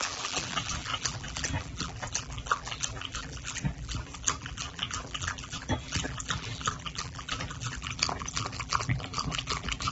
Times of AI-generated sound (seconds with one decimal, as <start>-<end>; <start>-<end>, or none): 0.0-9.9